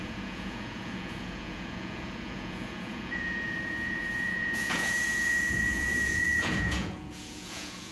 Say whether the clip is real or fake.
fake